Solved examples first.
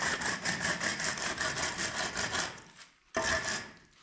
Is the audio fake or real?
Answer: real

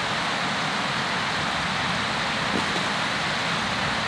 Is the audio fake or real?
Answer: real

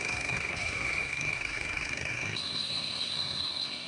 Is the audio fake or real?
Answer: fake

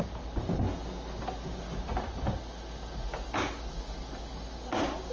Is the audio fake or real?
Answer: real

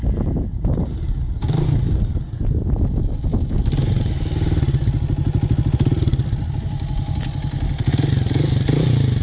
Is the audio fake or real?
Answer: real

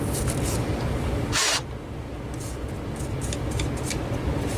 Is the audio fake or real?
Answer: real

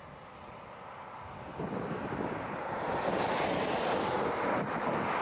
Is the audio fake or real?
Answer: real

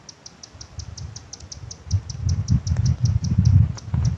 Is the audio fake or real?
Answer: real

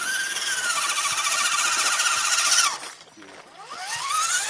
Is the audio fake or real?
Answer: real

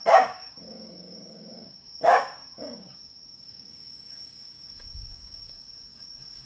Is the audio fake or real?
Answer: fake